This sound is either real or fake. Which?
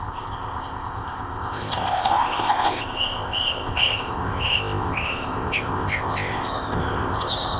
fake